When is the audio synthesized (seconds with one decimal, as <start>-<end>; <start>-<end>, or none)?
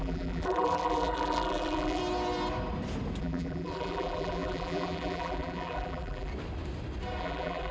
0.0-2.0; 3.2-6.3; 7.2-7.7